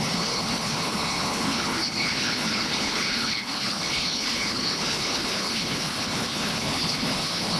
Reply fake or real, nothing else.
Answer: fake